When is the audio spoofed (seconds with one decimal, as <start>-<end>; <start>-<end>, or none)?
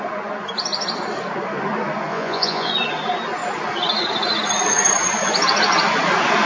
2.1-2.7